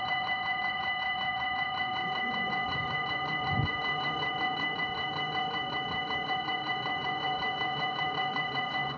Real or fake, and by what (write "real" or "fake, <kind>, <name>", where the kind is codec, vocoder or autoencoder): fake, vocoder, Vocos